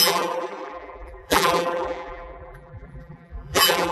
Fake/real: fake